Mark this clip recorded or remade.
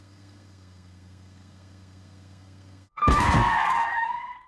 remade